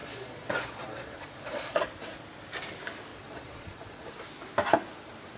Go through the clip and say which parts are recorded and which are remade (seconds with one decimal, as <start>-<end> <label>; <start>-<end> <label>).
0.0-1.8 remade; 1.8-3.1 recorded; 3.1-4.1 remade; 4.1-5.4 recorded